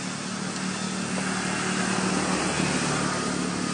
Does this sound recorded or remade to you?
recorded